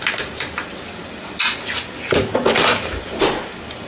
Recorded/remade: recorded